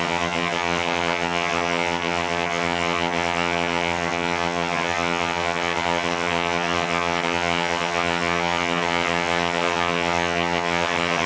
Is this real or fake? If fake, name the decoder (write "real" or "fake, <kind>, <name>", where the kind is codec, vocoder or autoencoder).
fake, vocoder, HiFi-GAN